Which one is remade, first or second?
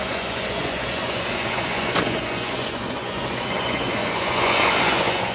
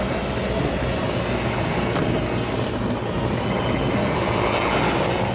first